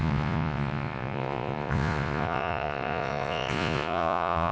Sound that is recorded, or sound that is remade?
remade